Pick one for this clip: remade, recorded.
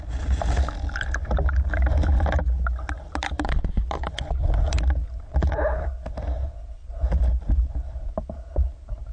recorded